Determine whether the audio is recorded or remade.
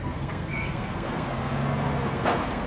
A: remade